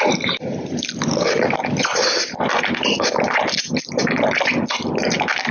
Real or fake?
real